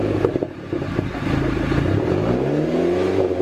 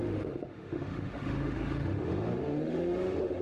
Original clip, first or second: first